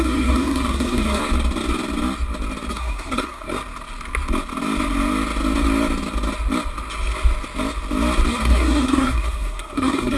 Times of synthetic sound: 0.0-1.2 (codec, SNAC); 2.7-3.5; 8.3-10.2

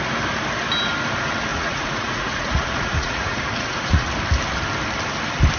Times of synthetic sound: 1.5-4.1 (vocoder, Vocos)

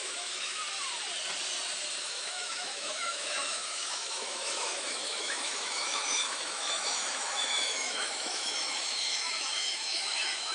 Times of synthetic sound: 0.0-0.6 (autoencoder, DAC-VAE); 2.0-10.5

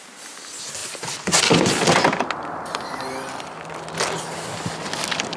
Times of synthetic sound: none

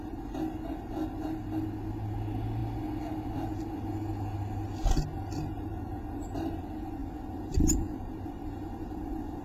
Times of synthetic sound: none

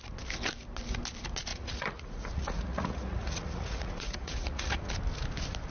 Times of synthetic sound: 1.5-4.9 (vocoder, Vocos)